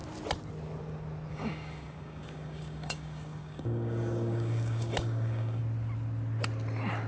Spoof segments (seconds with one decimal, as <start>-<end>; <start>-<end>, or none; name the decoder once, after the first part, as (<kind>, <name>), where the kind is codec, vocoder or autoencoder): 1.3-5.6 (codec, DAC)